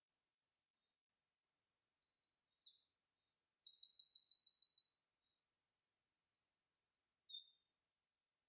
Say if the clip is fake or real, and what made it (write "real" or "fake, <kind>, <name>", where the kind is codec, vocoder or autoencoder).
real